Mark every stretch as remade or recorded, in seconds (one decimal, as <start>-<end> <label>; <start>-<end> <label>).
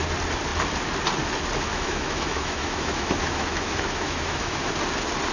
0.0-1.7 recorded; 1.7-4.7 remade; 4.7-5.3 recorded